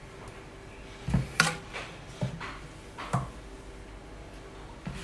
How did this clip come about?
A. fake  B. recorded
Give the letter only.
B